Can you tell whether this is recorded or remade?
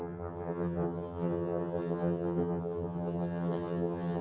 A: remade